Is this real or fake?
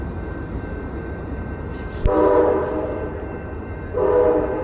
fake